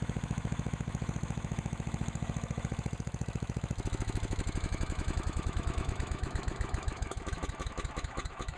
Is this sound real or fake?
fake